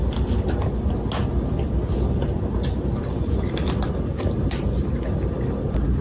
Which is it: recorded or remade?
recorded